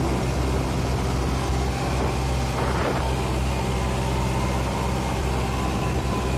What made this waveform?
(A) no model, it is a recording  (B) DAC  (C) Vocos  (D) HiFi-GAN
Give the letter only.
A